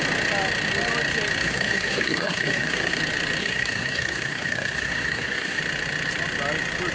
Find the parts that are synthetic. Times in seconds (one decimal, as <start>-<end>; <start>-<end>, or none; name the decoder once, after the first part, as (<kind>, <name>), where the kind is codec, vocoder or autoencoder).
1.4-3.0 (codec, SNAC); 3.4-5.6